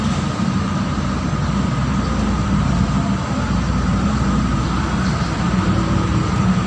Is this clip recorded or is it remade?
remade